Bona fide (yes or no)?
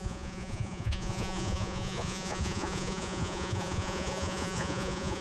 no